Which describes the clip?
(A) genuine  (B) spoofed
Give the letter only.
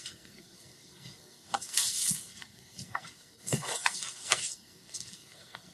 B